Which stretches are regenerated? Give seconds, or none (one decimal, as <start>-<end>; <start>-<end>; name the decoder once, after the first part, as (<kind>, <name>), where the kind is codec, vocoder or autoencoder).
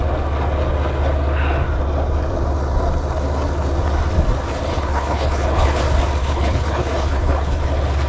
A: 4.7-5.8 (codec, HILCodec); 6.2-7.6